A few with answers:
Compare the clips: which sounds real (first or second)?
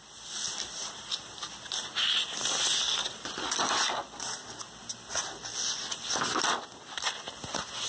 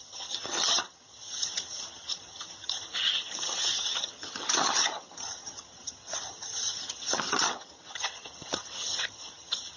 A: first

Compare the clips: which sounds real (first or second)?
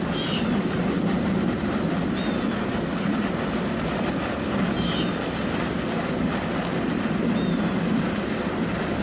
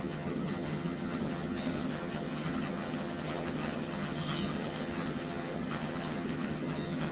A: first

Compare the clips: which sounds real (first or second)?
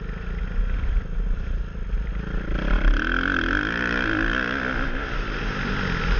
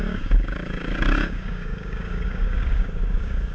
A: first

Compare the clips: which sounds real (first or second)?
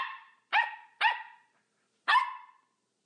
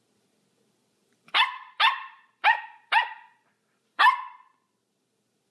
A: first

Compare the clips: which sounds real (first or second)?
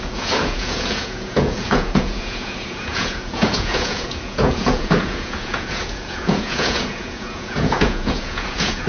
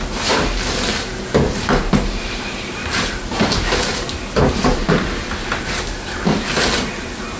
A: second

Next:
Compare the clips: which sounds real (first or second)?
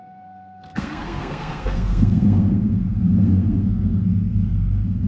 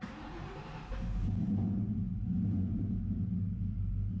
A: second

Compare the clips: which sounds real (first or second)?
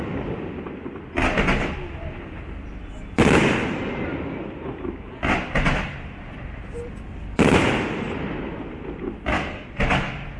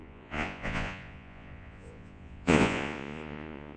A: first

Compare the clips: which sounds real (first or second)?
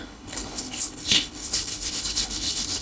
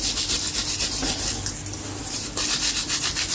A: second